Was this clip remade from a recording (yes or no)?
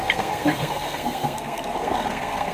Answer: yes